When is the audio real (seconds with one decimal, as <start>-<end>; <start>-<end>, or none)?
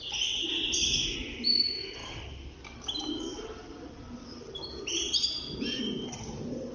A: 0.0-6.7